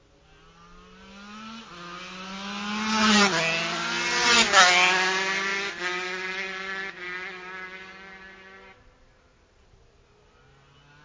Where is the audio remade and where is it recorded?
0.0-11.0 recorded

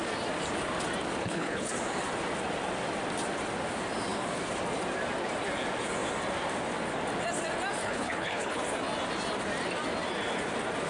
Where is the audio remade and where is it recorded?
0.0-1.2 recorded; 1.2-1.7 remade; 1.7-7.8 recorded; 7.8-8.6 remade; 8.6-10.9 recorded

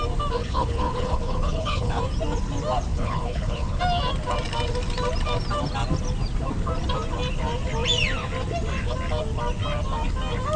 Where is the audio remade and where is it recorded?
0.0-0.4 recorded; 0.4-2.0 remade; 2.0-2.9 recorded; 2.9-3.8 remade; 3.8-10.6 recorded

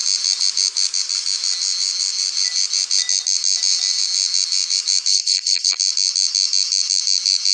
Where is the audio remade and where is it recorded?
0.0-5.1 recorded; 5.1-5.8 remade; 5.8-7.5 recorded